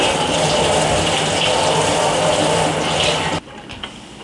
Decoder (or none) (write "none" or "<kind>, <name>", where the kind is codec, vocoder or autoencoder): none